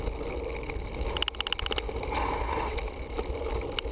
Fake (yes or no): no